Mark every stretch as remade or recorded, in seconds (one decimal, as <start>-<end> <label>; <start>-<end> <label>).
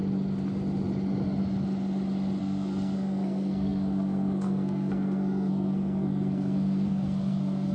0.0-2.4 recorded; 2.4-7.7 remade